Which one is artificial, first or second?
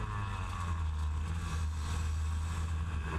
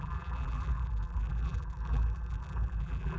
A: second